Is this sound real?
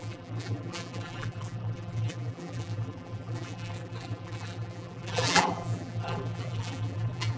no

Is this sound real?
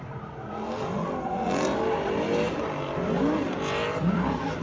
yes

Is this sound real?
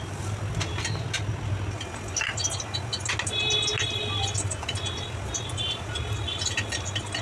yes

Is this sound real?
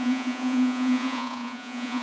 no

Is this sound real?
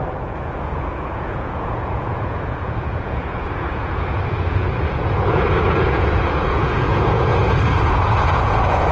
no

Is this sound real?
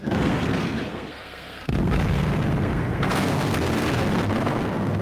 no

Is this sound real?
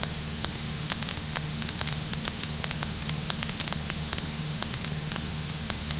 no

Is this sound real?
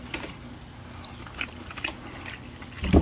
yes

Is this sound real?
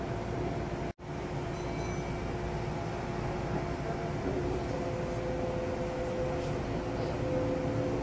yes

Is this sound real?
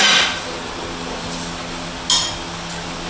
yes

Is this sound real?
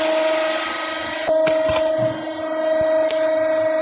yes